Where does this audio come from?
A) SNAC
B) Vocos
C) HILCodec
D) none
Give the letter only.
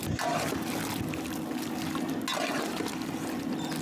D